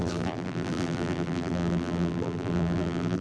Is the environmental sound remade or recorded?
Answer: remade